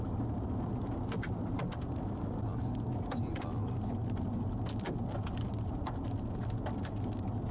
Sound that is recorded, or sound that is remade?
recorded